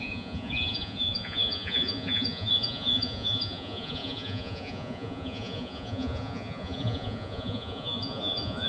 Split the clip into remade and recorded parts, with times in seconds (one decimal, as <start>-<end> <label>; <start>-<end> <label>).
0.0-8.7 remade